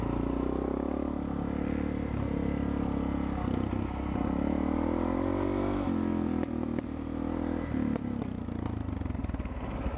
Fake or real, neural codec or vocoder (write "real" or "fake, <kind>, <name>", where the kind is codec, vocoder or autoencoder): real